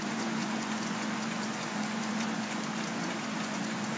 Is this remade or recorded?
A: remade